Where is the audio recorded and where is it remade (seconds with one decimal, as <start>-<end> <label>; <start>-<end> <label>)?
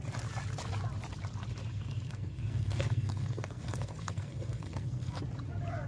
0.0-1.7 recorded; 1.7-5.2 remade; 5.2-5.9 recorded